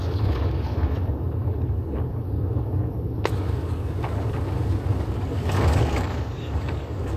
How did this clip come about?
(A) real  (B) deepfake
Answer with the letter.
B